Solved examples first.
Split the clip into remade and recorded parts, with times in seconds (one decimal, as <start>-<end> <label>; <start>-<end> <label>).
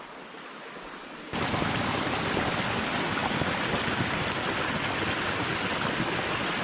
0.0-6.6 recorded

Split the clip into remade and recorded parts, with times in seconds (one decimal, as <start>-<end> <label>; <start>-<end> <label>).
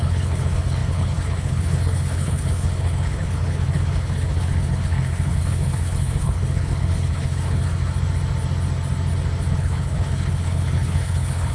0.0-7.8 remade; 7.8-9.5 recorded; 9.5-11.5 remade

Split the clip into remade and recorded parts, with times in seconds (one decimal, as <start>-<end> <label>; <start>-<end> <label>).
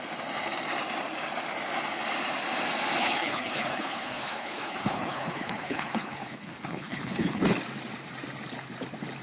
0.0-3.0 recorded; 3.0-7.4 remade; 7.4-9.2 recorded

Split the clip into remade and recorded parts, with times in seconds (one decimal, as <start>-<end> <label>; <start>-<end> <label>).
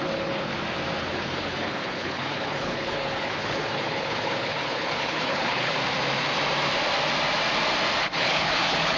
0.0-0.5 remade; 0.5-1.0 recorded; 1.0-5.7 remade; 5.7-8.0 recorded; 8.0-9.0 remade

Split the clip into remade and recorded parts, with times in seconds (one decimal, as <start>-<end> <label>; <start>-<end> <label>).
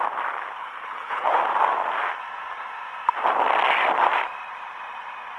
0.0-0.6 recorded; 0.6-1.4 remade; 1.4-5.4 recorded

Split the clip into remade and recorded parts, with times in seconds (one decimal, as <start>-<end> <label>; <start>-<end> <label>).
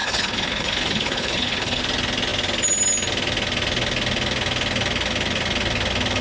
0.0-1.8 remade; 1.8-6.2 recorded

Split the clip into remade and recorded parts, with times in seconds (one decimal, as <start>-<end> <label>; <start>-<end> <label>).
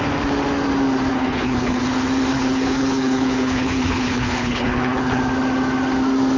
0.0-1.1 recorded; 1.1-1.8 remade; 1.8-2.3 recorded; 2.3-5.2 remade; 5.2-6.4 recorded